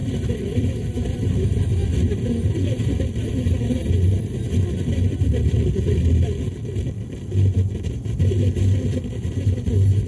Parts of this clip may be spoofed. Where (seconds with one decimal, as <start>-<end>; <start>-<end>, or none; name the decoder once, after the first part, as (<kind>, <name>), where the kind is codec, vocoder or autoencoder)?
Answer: 0.0-1.3 (vocoder, BigVGAN v2); 1.8-3.3